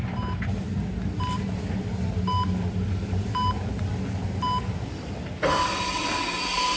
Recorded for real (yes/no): yes